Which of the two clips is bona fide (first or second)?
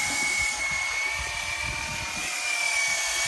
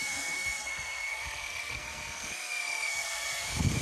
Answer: first